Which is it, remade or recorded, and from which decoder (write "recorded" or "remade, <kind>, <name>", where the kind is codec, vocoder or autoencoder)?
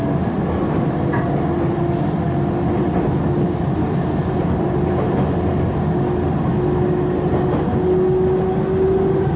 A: recorded